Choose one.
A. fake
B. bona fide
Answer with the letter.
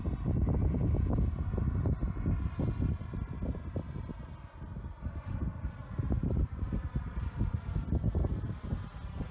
B